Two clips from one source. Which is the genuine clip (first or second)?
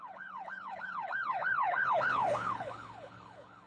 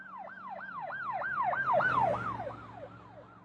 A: second